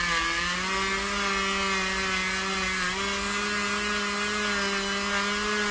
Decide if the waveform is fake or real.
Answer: real